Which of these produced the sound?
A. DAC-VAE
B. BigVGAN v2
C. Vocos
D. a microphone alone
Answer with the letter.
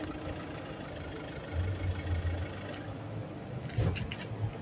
D